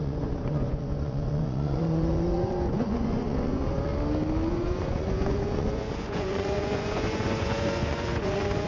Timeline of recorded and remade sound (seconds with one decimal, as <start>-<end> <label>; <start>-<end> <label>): 0.0-3.9 remade; 3.9-4.5 recorded; 4.5-8.7 remade